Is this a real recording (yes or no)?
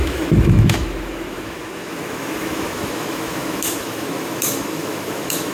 no